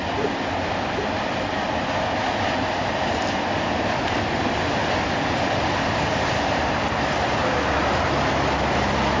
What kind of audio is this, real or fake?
real